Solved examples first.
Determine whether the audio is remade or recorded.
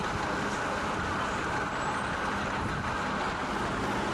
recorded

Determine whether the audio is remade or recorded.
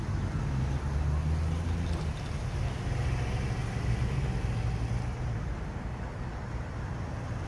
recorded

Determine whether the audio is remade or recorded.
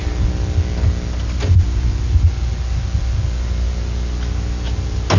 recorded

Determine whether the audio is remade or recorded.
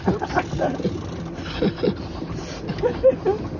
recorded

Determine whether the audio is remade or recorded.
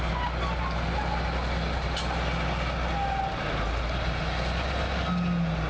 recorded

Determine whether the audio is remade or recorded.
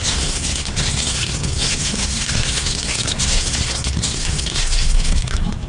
remade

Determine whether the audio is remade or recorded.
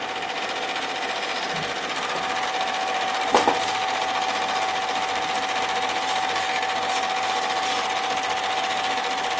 recorded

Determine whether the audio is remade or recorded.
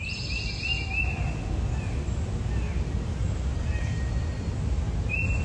recorded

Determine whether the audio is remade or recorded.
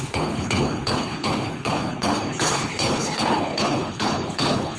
remade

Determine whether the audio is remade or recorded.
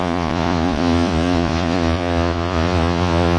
remade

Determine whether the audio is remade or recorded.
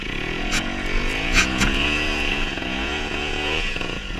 remade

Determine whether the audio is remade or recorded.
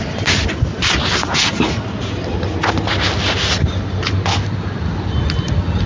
recorded